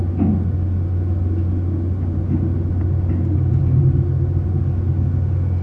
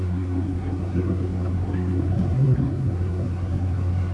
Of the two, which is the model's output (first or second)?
second